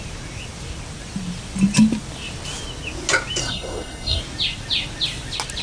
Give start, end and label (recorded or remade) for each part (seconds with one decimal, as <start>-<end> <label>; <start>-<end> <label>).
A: 0.0-3.4 recorded; 3.4-4.2 remade; 4.2-5.6 recorded